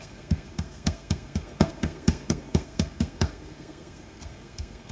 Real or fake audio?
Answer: fake